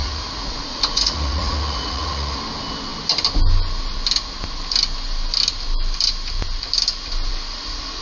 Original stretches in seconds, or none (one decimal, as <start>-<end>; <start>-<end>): 2.4-8.0